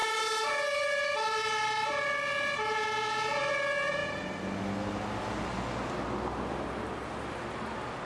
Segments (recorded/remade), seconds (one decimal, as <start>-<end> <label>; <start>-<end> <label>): 0.0-3.5 remade; 3.5-8.1 recorded